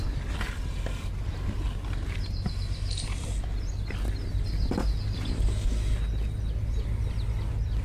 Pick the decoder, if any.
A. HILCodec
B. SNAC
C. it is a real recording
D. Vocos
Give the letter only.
C